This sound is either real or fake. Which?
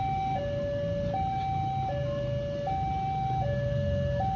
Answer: real